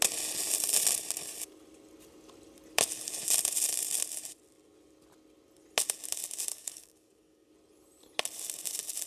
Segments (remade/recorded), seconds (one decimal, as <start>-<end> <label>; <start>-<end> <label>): 0.0-6.5 recorded; 6.5-7.5 remade; 7.5-9.1 recorded